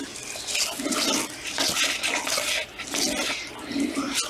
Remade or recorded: recorded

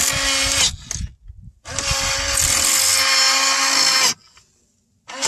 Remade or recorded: recorded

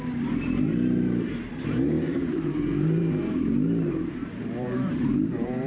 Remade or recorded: remade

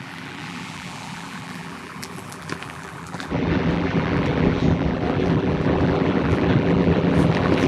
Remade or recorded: remade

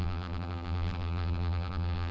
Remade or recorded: remade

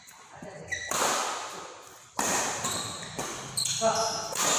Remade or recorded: recorded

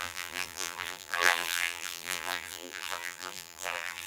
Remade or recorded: remade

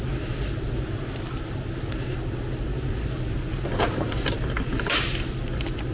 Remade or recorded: recorded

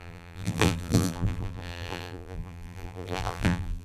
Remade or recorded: remade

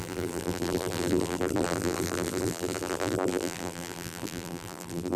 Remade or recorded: remade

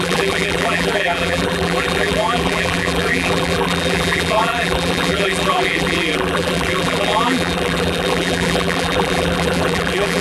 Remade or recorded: remade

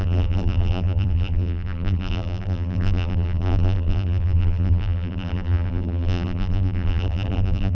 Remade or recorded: remade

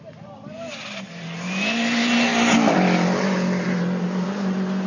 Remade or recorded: recorded